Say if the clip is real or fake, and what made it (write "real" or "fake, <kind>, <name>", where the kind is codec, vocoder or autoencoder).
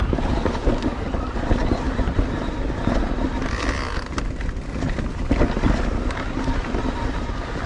real